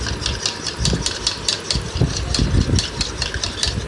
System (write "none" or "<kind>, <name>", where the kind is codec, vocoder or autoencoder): none